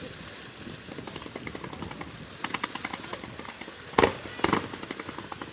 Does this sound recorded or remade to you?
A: recorded